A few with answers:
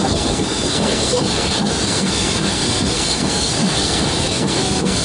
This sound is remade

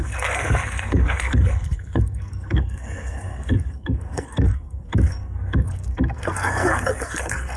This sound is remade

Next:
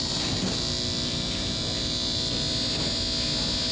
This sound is recorded